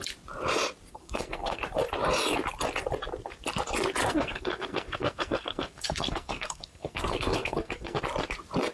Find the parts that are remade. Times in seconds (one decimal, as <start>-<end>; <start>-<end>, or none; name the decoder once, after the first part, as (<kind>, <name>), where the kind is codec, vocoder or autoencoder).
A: 0.9-1.6 (codec, SNAC); 4.0-8.0

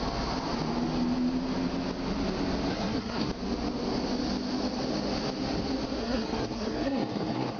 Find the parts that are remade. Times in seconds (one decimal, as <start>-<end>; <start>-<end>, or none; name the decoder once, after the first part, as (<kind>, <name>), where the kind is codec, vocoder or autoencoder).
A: 2.7-3.3 (codec, SNAC); 6.0-7.6